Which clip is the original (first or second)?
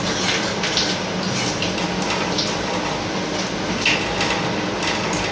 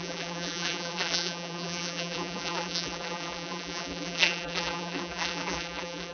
first